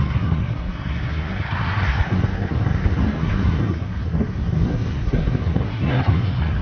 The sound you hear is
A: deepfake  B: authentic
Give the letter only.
A